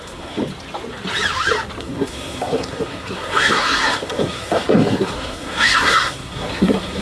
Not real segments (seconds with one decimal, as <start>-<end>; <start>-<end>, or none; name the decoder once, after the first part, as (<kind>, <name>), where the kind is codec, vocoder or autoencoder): 0.0-0.4 (codec, SNAC); 1.8-7.0